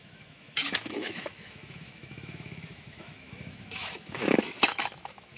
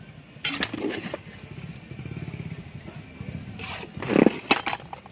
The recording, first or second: second